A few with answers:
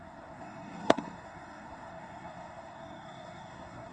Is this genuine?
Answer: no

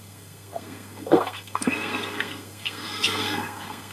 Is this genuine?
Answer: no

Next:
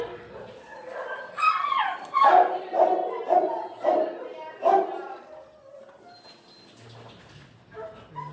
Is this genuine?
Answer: yes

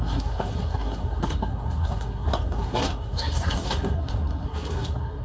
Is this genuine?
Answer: no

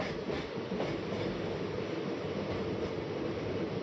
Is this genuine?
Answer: yes